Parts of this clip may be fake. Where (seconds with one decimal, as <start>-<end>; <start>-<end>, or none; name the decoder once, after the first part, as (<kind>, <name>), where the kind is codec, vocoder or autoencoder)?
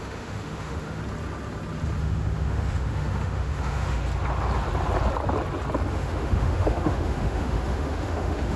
0.0-1.0 (autoencoder, DAC-VAE); 2.0-4.0; 5.9-8.6